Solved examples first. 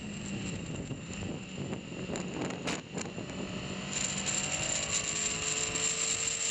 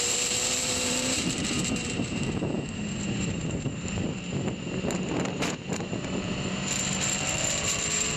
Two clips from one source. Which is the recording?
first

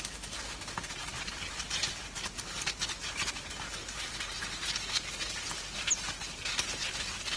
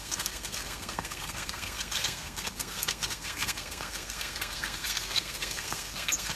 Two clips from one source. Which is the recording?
first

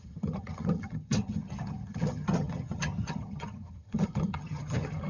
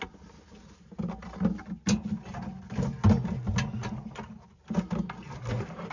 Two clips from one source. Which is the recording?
second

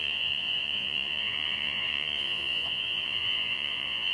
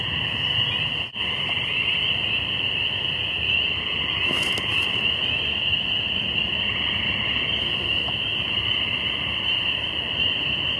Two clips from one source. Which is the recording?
second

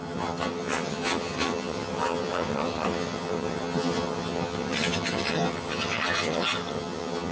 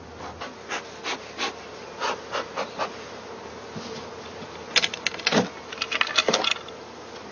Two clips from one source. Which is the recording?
second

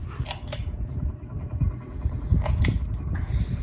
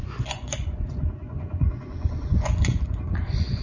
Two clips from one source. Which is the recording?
first